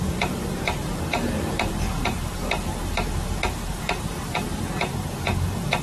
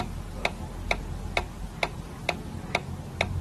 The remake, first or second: first